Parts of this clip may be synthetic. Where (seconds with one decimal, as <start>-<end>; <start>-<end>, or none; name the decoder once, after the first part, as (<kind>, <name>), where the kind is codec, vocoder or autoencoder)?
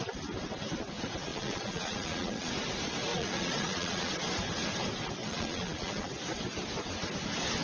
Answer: 1.3-2.5 (vocoder, Vocos); 3.1-4.1; 5.2-6.1